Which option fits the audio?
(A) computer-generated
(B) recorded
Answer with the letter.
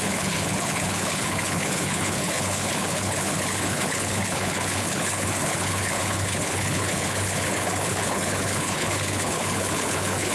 A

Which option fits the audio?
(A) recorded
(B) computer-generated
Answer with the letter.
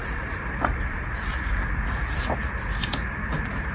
B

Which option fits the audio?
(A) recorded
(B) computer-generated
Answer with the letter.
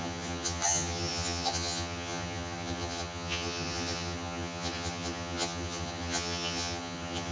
B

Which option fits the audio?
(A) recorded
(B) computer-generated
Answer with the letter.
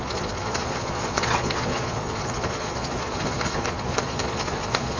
B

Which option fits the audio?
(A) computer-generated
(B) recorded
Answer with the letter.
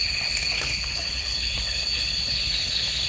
A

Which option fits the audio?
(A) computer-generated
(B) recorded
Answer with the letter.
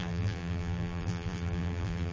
A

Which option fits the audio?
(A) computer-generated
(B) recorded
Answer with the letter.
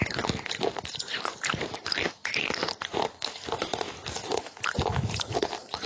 B